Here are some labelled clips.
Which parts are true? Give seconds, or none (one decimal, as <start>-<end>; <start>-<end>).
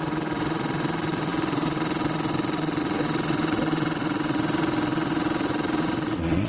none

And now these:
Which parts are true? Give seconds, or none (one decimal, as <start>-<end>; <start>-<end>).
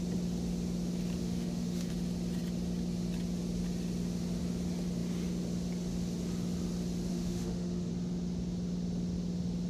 0.0-1.2; 1.9-7.1; 7.9-9.7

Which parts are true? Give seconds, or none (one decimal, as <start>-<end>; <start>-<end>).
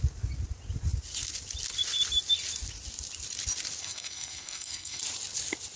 0.0-3.8; 5.0-5.8